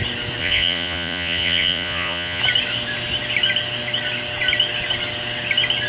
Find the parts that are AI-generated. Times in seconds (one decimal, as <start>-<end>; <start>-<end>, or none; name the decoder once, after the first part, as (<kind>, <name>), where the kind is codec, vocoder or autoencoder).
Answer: 0.4-2.4 (vocoder, Vocos)